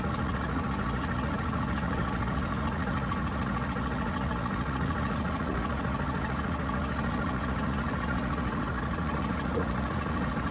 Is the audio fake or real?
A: fake